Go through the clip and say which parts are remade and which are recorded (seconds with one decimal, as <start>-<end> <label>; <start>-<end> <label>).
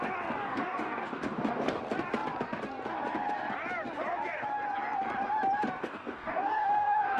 0.0-0.4 recorded; 0.4-1.8 remade; 1.8-5.8 recorded; 5.8-7.2 remade